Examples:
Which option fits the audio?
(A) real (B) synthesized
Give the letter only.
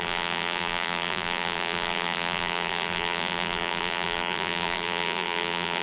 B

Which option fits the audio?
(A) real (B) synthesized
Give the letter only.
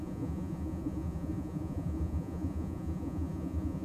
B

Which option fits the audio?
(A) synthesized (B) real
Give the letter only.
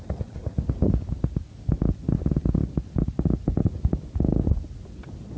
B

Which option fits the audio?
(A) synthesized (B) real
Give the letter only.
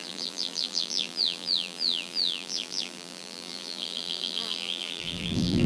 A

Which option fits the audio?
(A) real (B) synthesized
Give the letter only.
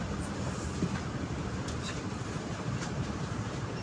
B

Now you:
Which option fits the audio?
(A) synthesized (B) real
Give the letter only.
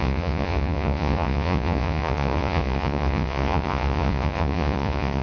A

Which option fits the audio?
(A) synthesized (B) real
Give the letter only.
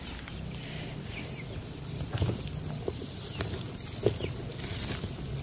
B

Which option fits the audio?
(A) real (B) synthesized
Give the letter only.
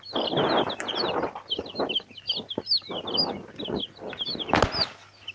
A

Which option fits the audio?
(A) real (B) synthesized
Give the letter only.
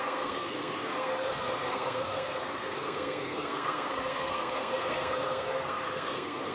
B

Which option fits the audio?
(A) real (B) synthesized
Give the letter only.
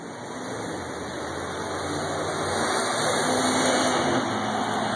A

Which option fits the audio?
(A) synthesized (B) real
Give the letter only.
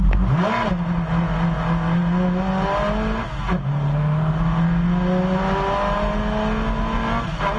B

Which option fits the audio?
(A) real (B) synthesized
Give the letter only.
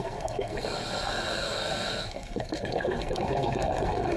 B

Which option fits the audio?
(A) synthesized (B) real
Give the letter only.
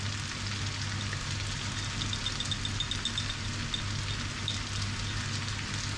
B